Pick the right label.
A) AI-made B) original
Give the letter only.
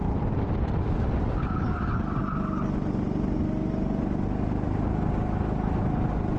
B